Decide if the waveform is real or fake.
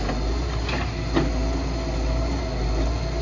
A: real